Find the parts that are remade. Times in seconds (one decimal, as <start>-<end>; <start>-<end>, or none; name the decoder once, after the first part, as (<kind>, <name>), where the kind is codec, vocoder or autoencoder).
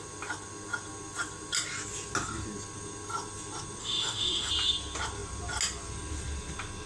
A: 3.8-4.5 (autoencoder, DAC-VAE)